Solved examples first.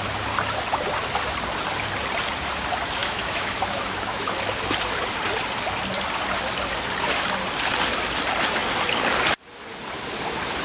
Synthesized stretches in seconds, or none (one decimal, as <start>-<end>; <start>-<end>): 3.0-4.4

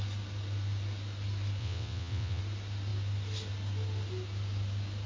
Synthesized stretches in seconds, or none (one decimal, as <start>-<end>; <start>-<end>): 1.6-2.4

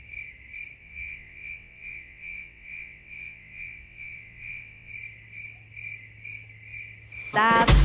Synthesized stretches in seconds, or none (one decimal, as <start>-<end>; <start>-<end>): 0.8-4.9

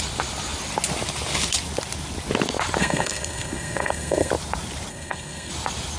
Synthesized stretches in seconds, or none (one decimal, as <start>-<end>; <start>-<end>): 2.8-4.3; 4.9-5.5

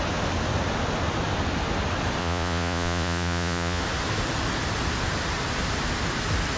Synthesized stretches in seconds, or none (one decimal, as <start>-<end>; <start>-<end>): 2.2-3.8